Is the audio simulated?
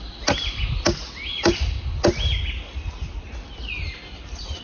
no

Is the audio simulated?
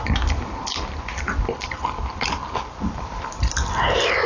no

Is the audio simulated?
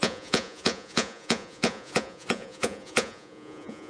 yes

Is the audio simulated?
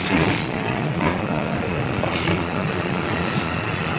yes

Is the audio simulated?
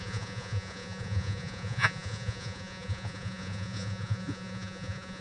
yes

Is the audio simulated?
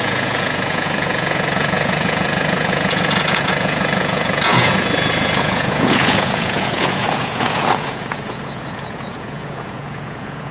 yes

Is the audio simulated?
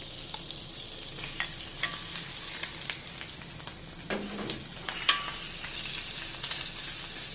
no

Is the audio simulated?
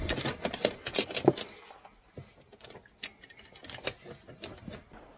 no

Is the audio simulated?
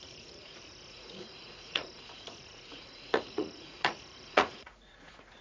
yes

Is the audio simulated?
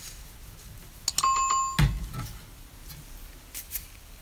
no